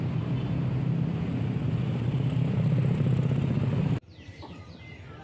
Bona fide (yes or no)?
yes